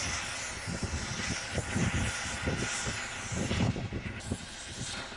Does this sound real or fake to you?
real